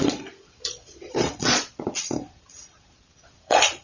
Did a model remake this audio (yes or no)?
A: yes